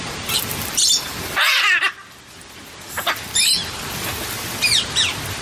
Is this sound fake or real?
real